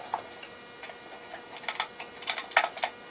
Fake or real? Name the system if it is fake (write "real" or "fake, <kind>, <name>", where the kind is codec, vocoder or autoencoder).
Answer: real